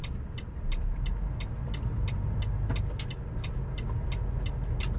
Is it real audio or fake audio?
real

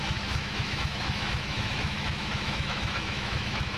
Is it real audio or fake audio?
fake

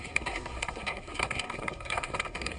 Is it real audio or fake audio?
fake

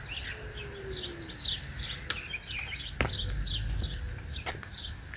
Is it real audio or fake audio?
real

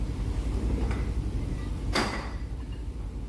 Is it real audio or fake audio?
fake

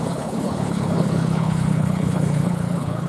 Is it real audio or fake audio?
fake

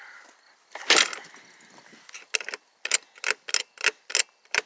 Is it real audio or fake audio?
real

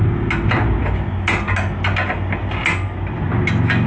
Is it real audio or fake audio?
real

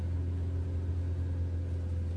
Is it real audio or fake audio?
real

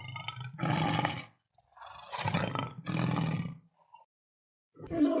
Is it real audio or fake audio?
real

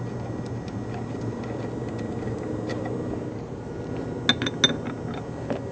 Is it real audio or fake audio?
real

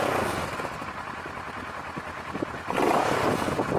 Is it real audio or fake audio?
real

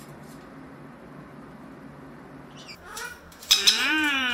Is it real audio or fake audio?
fake